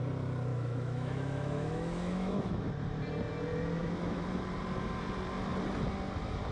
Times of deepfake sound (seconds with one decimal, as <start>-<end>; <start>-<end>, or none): 0.5-2.7; 3.8-4.4

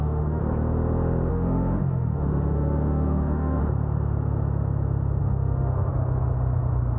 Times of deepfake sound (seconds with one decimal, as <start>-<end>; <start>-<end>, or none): 0.0-0.4; 1.3-3.6; 5.2-5.9

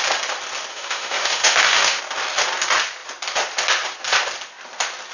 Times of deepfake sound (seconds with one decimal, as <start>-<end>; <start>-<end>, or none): 0.7-2.0

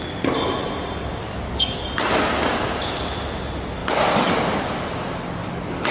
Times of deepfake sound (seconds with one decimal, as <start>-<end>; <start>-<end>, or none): 1.2-1.9; 5.4-5.9

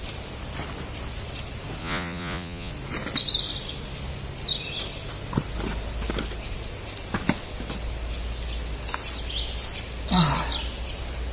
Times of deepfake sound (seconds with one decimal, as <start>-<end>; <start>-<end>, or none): 1.8-2.7

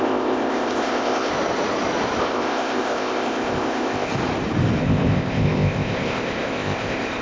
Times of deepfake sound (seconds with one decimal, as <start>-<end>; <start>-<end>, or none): 0.0-1.3; 2.2-4.1; 4.8-7.2